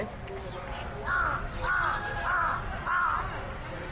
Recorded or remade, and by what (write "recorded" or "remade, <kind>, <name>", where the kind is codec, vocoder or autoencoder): recorded